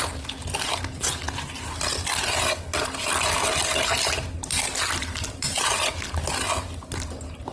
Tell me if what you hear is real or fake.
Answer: real